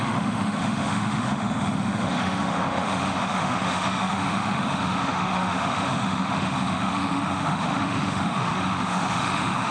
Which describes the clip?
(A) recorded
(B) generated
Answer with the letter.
B